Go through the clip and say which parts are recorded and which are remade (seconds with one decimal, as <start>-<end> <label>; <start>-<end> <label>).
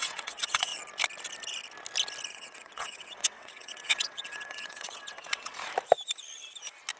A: 0.0-0.7 remade; 0.7-2.3 recorded; 2.3-5.5 remade; 5.5-7.0 recorded